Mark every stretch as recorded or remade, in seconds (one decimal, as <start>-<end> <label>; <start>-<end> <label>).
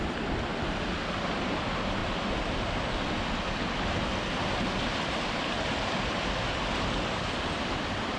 0.0-0.5 remade; 0.5-1.0 recorded; 1.0-2.0 remade; 2.0-5.8 recorded; 5.8-8.2 remade